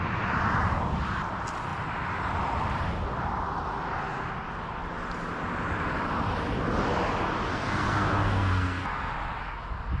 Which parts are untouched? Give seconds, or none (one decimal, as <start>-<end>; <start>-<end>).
0.0-7.5; 9.1-10.0